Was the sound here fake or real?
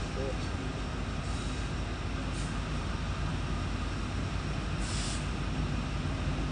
real